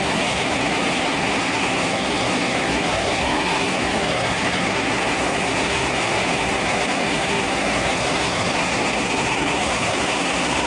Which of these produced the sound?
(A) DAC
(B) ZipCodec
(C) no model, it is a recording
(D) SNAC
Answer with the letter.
D